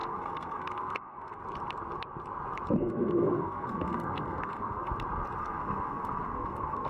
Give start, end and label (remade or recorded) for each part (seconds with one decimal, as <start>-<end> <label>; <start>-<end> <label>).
0.0-1.4 remade; 1.4-2.8 recorded; 2.8-4.9 remade; 4.9-5.4 recorded; 5.4-6.9 remade